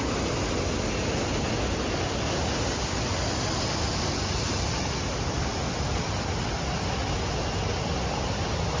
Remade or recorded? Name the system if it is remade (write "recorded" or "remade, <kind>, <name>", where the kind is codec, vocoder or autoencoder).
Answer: recorded